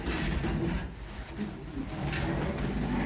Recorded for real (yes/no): yes